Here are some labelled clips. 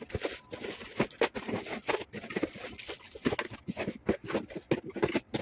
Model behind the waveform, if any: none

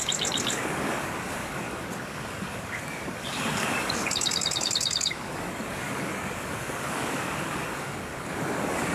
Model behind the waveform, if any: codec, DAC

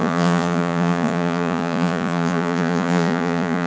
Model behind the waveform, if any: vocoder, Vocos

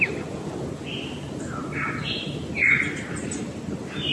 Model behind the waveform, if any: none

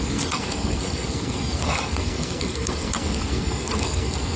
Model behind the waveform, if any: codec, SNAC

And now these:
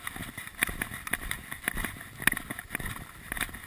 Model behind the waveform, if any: none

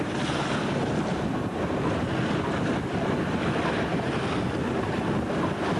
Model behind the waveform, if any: none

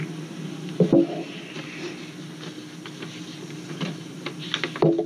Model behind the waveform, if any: none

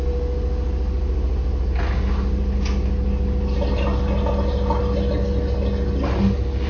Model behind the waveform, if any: none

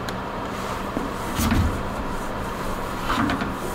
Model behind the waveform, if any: vocoder, BigVGAN v2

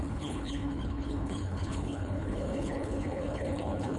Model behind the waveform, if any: codec, HILCodec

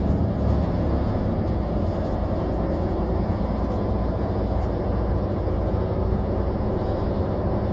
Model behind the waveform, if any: none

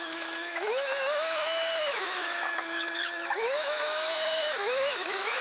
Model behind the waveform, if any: autoencoder, DAC-VAE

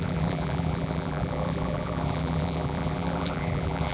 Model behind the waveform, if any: vocoder, BigVGAN v2